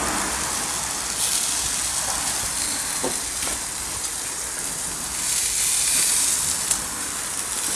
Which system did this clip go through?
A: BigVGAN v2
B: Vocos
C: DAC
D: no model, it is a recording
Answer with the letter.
D